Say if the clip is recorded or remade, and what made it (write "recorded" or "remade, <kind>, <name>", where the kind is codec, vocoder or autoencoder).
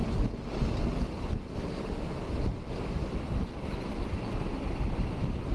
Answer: recorded